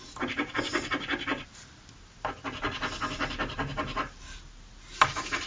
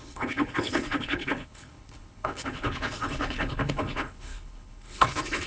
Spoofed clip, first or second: second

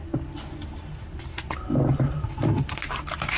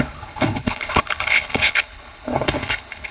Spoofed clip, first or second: second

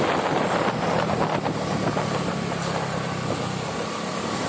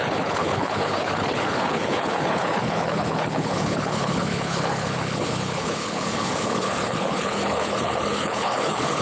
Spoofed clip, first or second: second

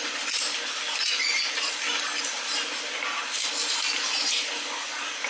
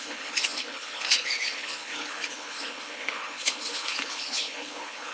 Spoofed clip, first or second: second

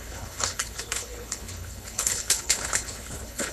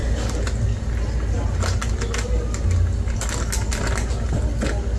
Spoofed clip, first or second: first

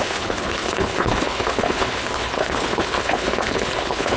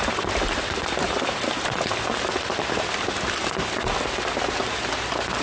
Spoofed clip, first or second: first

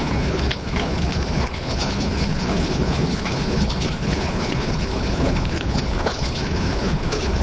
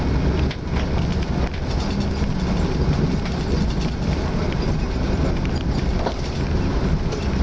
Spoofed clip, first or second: first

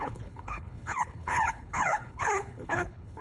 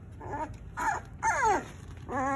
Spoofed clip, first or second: first